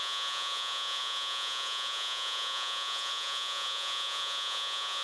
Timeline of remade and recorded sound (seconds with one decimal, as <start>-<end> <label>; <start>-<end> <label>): 0.0-5.0 remade